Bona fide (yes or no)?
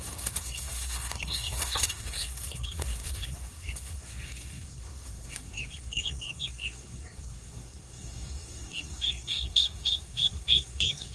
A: no